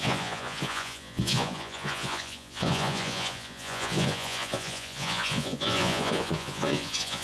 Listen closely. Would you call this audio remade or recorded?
remade